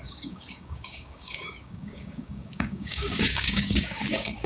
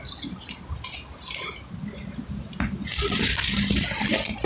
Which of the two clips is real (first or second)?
second